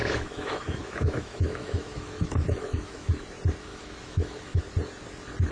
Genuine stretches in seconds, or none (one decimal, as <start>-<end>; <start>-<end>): 3.1-3.7; 4.6-5.5